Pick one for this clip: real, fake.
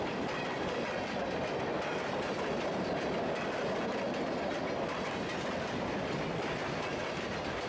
real